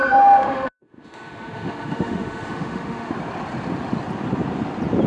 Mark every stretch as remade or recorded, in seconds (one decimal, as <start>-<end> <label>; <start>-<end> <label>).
0.0-3.1 remade; 3.1-5.1 recorded